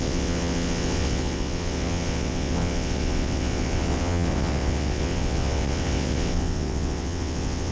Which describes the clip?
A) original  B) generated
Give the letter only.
B